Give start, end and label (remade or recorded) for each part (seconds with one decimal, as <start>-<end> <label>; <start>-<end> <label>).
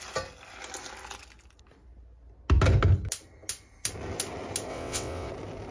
0.0-4.7 recorded; 4.7-5.3 remade; 5.3-5.7 recorded